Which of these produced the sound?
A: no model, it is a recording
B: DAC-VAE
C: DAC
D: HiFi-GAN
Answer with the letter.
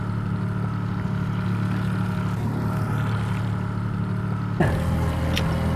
A